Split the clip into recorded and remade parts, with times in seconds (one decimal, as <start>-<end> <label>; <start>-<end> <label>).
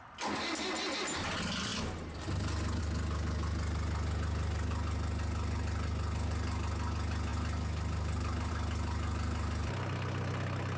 0.0-10.8 recorded